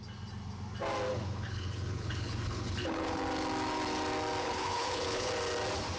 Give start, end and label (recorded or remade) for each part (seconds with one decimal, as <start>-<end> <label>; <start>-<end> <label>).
0.0-1.1 recorded; 1.1-3.2 remade; 3.2-4.4 recorded; 4.4-5.3 remade; 5.3-6.0 recorded